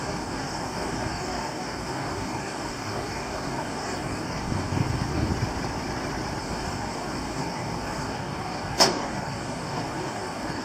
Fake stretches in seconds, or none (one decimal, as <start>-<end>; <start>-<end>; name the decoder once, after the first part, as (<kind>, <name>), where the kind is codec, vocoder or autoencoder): 0.0-5.3 (codec, DAC); 6.4-10.6